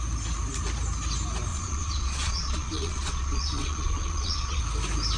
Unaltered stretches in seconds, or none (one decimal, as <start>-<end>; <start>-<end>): 0.0-1.5; 4.6-5.2